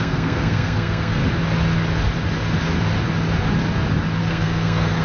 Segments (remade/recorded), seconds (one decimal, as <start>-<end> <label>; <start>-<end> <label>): 0.0-1.2 remade; 1.2-4.2 recorded; 4.2-5.0 remade